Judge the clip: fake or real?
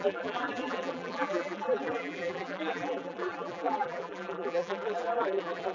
fake